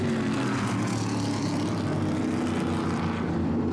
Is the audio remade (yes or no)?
no